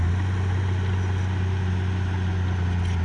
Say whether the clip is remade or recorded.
recorded